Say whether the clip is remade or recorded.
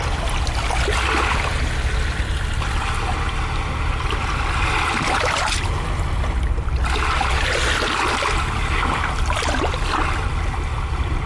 recorded